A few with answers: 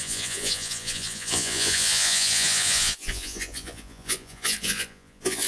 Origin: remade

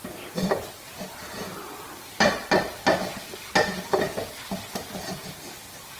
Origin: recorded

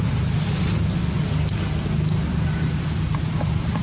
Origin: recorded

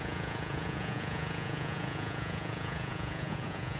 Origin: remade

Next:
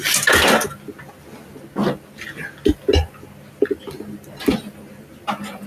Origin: recorded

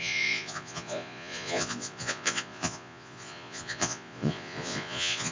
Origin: remade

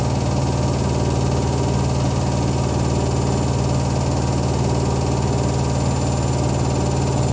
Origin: recorded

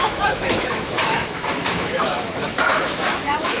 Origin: remade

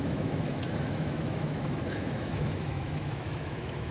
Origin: remade